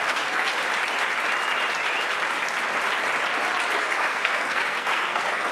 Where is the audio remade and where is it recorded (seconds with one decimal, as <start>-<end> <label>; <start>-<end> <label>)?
0.0-0.5 remade; 0.5-3.8 recorded; 3.8-5.5 remade